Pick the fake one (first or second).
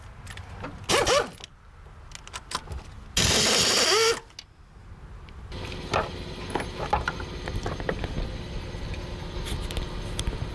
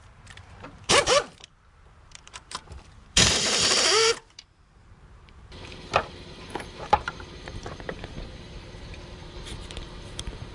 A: second